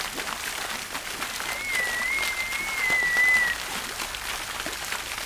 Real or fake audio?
real